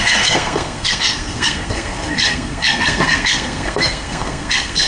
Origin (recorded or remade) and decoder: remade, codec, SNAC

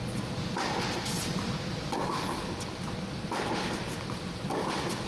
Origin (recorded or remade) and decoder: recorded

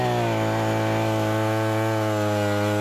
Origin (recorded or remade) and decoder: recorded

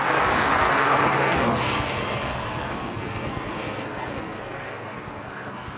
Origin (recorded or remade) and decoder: remade, codec, SNAC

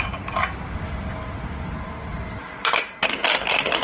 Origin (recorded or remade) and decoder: recorded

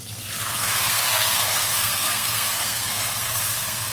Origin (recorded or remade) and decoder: remade, codec, SNAC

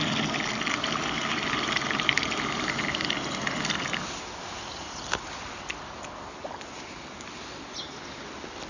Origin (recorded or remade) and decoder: recorded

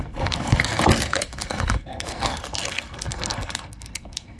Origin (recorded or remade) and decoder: remade, codec, SNAC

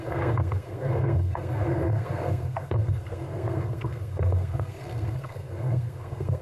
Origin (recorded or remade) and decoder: remade, codec, SNAC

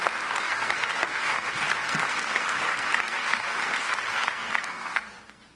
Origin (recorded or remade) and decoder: remade, codec, SNAC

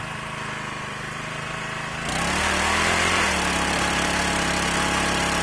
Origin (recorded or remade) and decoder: recorded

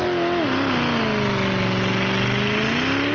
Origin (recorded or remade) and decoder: recorded